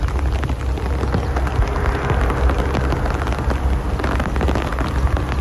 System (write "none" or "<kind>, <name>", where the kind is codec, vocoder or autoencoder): none